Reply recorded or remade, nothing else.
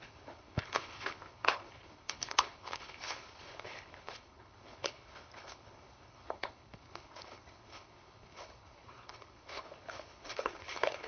remade